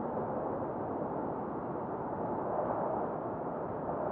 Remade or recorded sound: recorded